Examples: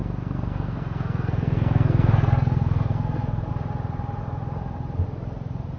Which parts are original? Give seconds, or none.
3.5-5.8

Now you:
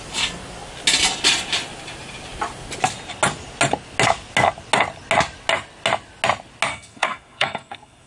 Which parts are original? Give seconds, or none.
0.0-6.7

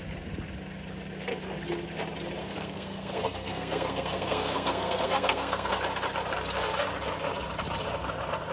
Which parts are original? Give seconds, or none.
0.0-2.4; 5.7-8.5

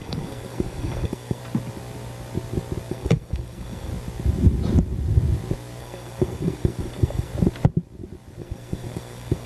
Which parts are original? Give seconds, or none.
1.4-2.9; 3.9-5.8; 7.3-8.4